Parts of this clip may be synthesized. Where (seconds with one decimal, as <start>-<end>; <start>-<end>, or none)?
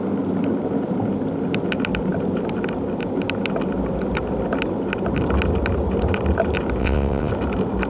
6.8-7.3